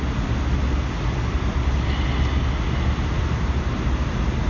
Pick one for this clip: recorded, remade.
recorded